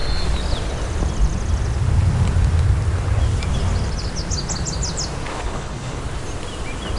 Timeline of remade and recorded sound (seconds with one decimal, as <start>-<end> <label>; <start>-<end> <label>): 0.0-5.3 recorded; 5.3-6.0 remade; 6.0-7.0 recorded